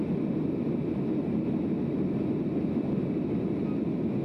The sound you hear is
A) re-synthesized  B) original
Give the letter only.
B